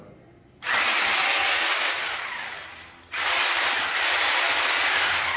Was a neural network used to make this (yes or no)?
no